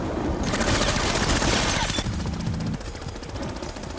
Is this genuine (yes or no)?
yes